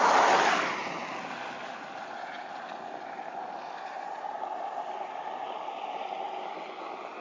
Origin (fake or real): real